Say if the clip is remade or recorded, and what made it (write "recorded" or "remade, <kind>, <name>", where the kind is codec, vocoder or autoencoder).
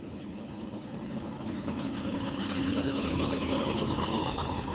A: remade, codec, HILCodec